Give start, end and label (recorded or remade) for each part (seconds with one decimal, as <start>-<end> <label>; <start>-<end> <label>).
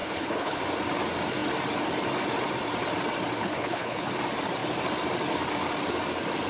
0.0-0.6 remade; 0.6-3.4 recorded; 3.4-4.1 remade; 4.1-6.5 recorded